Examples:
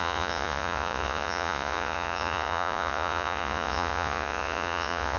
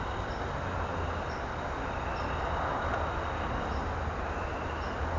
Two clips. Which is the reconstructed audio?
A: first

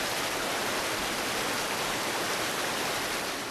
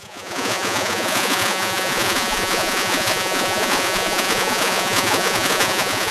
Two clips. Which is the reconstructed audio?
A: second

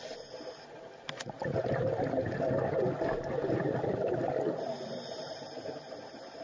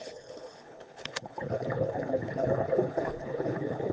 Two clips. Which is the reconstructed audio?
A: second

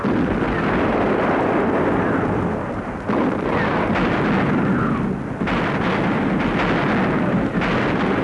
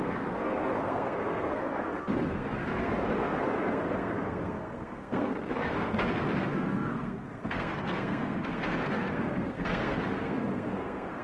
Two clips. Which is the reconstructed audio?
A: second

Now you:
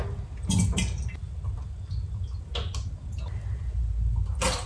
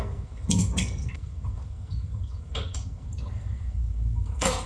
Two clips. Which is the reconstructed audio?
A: second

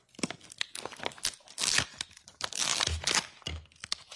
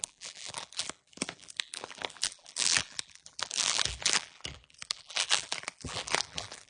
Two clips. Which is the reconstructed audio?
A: second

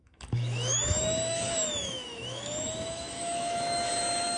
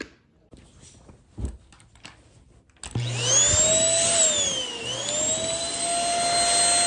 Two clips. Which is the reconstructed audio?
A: first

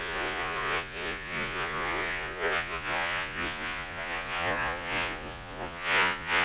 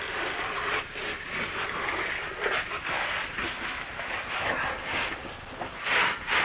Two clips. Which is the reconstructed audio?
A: first